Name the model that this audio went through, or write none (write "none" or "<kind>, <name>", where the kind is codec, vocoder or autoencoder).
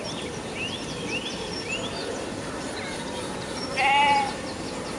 none